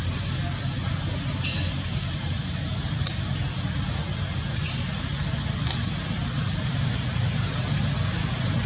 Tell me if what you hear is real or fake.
real